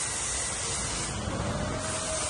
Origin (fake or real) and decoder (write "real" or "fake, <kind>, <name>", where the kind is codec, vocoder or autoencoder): real